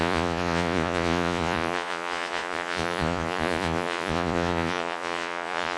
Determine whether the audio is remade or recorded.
remade